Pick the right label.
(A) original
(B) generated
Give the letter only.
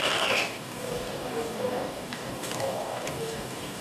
B